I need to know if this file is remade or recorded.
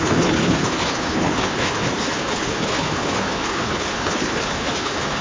remade